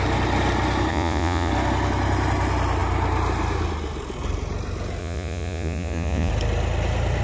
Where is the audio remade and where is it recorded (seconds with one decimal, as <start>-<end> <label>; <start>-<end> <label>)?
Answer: 0.0-0.9 recorded; 0.9-1.5 remade; 1.5-5.0 recorded; 5.0-6.3 remade; 6.3-7.2 recorded